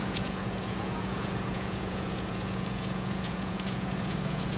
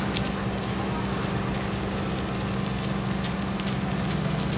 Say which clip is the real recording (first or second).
second